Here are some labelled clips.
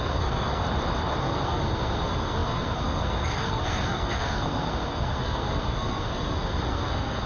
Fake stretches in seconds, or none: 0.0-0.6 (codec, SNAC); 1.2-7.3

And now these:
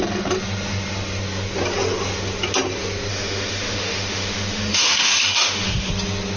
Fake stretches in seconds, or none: 3.1-5.9 (autoencoder, DAC-VAE)

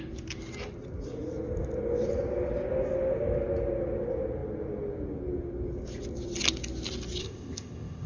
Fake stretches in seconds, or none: 7.2-8.1 (codec, ZipCodec)

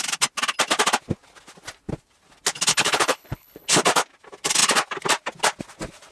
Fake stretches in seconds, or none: 2.7-3.8 (codec, HILCodec)

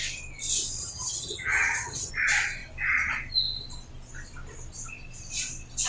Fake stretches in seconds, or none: 0.8-2.1 (vocoder, HiFi-GAN)

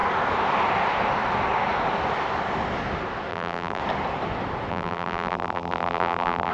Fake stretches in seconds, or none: 3.3-3.8 (vocoder, BigVGAN v2); 4.7-6.5

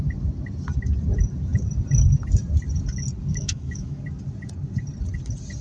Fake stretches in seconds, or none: 3.3-4.0 (autoencoder, DAC-VAE)